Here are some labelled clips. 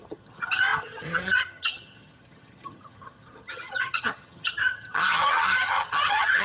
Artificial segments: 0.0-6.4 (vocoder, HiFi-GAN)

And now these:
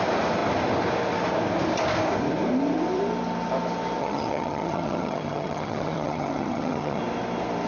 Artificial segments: 4.0-7.0 (vocoder, HiFi-GAN)

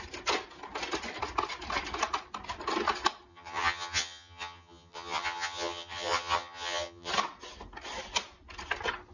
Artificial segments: 3.3-7.1 (vocoder, HiFi-GAN)

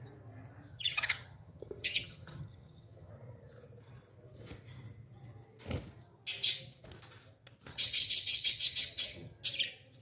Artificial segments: 0.7-3.1 (vocoder, HiFi-GAN); 7.7-9.4

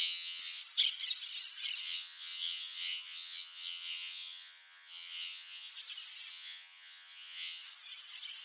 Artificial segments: 0.0-0.6 (vocoder, HiFi-GAN); 1.8-5.7; 6.3-7.6